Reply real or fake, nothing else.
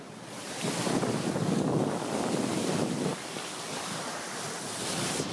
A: real